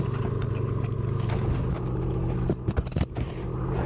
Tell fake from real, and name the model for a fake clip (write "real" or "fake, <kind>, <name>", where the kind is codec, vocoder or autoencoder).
real